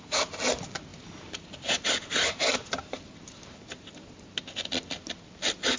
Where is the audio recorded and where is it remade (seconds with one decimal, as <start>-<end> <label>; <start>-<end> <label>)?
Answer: 0.0-0.9 recorded; 0.9-4.4 remade; 4.4-5.8 recorded